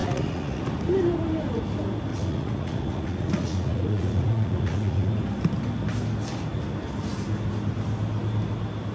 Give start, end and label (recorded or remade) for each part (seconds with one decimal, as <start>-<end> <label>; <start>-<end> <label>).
0.0-0.6 remade; 0.6-2.1 recorded; 2.1-5.1 remade; 5.1-8.9 recorded